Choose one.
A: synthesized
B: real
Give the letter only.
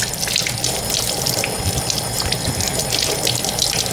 B